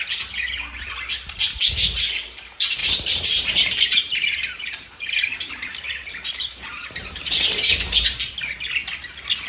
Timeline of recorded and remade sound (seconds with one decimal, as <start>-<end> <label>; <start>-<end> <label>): 0.0-2.8 recorded; 2.8-5.7 remade; 5.7-6.8 recorded; 6.8-8.6 remade; 8.6-9.5 recorded